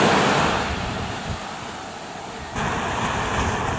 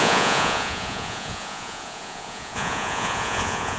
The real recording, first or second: first